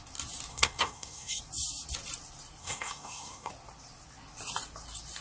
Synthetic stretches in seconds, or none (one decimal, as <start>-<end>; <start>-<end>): 0.5-1.4; 2.6-3.5